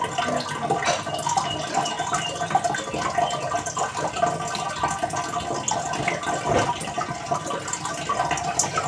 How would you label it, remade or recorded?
recorded